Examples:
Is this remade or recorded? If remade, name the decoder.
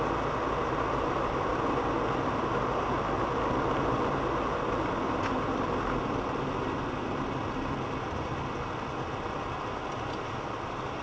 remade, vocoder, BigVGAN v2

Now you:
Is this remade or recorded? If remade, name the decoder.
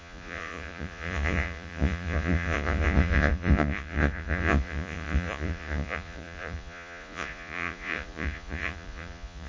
remade, vocoder, Vocos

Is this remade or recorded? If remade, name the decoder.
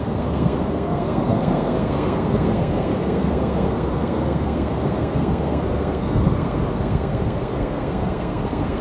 remade, codec, SNAC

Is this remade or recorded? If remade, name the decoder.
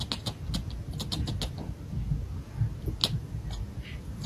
recorded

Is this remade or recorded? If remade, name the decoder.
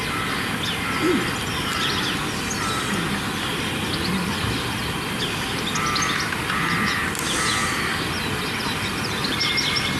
recorded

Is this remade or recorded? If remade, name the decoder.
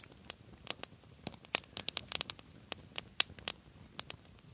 recorded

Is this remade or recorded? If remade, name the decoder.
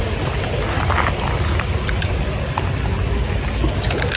recorded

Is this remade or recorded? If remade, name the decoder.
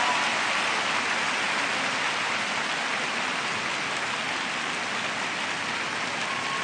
recorded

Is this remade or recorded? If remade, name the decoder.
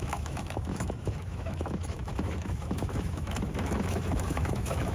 remade, autoencoder, DAC-VAE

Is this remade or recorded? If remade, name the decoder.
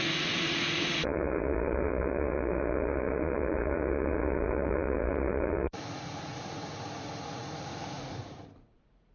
remade, vocoder, Vocos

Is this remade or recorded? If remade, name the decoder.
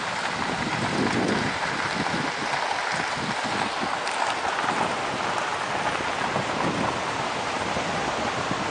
recorded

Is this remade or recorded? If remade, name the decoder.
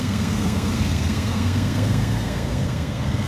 remade, codec, SNAC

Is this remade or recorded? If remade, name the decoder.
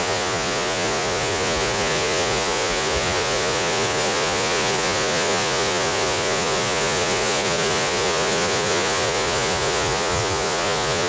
remade, vocoder, Vocos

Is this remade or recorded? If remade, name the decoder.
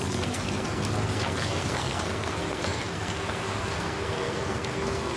remade, codec, SNAC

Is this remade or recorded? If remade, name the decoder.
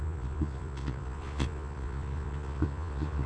remade, vocoder, Vocos